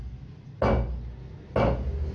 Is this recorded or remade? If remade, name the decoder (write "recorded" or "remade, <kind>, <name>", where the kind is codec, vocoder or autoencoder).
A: recorded